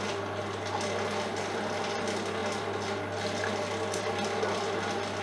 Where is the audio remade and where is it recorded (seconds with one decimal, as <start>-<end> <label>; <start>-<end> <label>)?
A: 0.0-5.2 recorded